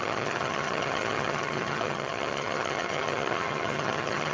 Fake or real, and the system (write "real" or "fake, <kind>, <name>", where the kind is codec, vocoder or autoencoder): fake, vocoder, HiFi-GAN